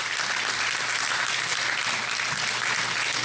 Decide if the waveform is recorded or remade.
recorded